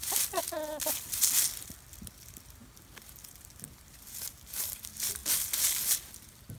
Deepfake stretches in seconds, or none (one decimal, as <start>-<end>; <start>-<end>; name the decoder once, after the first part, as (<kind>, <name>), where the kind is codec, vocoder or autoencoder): none